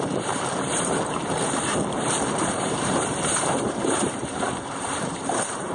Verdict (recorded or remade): remade